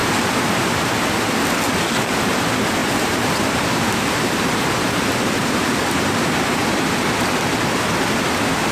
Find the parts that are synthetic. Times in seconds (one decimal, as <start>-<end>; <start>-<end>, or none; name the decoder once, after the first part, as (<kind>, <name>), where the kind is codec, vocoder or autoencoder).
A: 0.0-0.9 (vocoder, BigVGAN v2); 2.8-7.1